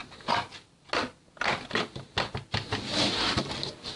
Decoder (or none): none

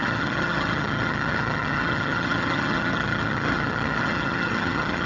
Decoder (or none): vocoder, HiFi-GAN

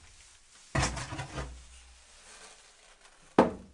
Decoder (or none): none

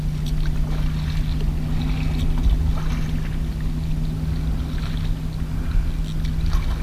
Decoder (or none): none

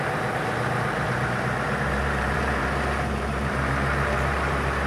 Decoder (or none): vocoder, BigVGAN v2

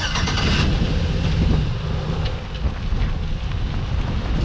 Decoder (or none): none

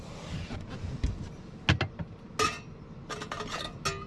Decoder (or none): none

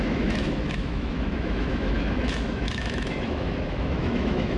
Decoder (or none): autoencoder, DAC-VAE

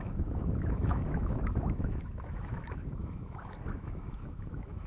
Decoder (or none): autoencoder, DAC-VAE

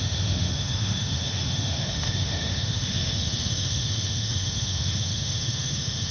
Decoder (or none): autoencoder, DAC-VAE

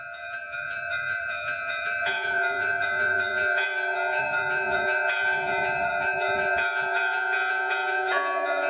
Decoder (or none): vocoder, Vocos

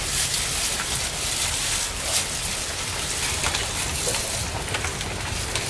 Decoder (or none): none